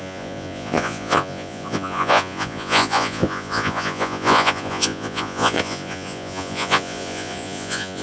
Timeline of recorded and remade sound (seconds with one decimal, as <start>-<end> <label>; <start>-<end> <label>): 0.0-8.0 remade